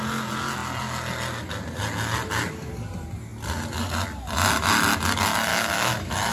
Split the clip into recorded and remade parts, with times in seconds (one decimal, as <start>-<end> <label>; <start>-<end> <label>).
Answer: 0.0-5.5 recorded; 5.5-6.3 remade